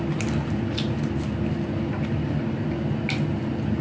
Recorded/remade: recorded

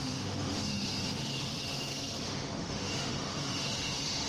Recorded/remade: remade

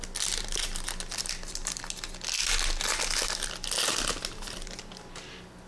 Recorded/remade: recorded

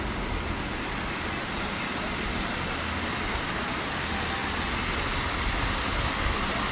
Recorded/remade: recorded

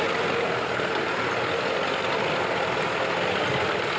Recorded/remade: recorded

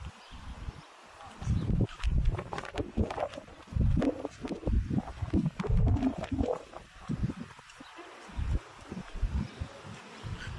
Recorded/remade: recorded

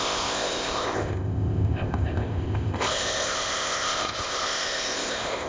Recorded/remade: remade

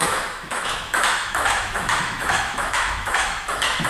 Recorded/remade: remade